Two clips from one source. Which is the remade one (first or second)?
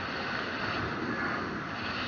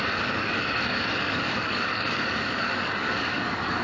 second